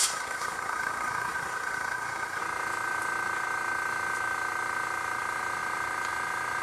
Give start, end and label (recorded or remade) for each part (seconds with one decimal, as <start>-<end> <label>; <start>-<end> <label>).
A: 0.0-2.4 remade; 2.4-6.6 recorded